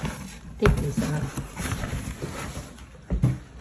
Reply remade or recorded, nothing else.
recorded